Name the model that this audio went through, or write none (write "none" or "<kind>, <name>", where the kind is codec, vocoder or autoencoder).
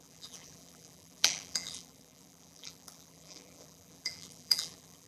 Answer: vocoder, BigVGAN v2